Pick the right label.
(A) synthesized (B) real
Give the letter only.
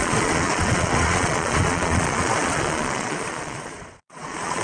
A